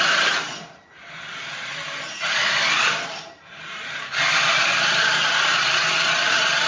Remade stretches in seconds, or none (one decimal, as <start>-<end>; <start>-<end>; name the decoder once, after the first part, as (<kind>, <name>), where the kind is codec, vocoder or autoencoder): none